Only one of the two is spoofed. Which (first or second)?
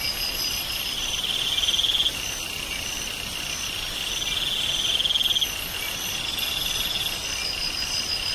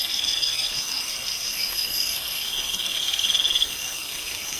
second